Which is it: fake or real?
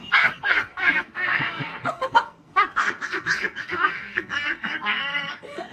fake